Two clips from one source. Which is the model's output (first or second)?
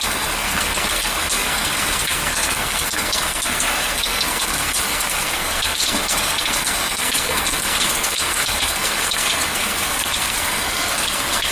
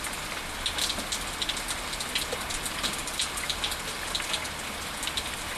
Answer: first